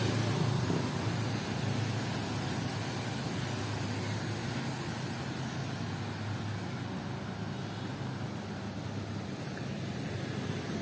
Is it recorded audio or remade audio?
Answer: recorded